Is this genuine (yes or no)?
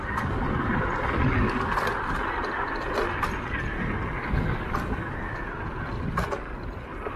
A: yes